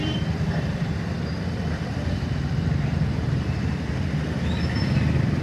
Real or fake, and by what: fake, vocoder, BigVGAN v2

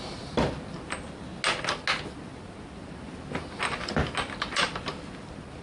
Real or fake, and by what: real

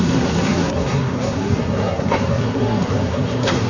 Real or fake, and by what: fake, codec, SNAC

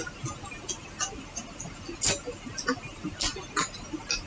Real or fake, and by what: real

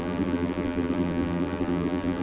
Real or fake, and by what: fake, vocoder, BigVGAN v2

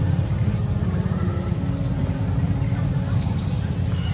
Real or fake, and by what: real